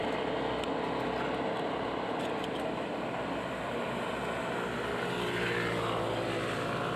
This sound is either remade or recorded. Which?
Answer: recorded